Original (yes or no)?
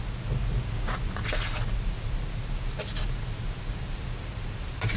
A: yes